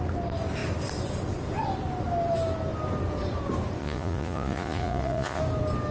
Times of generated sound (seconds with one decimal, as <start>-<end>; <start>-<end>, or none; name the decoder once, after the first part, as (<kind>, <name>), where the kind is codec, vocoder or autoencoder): 3.8-5.4 (vocoder, Vocos)